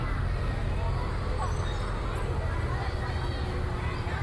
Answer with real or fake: real